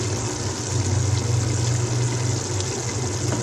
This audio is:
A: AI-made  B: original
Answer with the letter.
B